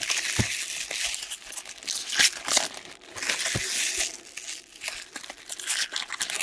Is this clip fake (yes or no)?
no